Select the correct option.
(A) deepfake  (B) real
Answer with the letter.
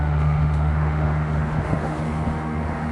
A